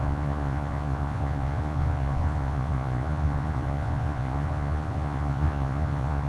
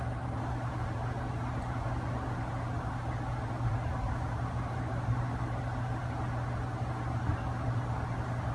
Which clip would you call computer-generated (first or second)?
first